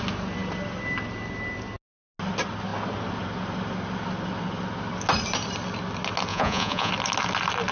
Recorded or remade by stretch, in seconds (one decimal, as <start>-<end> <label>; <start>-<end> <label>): 0.0-6.3 recorded; 6.3-6.9 remade; 6.9-7.7 recorded